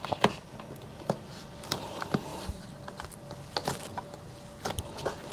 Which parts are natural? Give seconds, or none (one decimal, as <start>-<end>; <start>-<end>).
0.0-2.3; 3.8-5.3